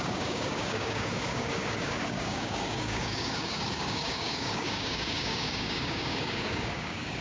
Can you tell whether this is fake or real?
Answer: fake